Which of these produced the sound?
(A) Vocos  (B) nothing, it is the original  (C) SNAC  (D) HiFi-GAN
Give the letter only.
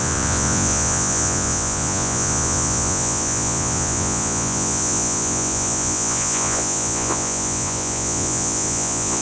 A